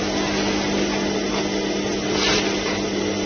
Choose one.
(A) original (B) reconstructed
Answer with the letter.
A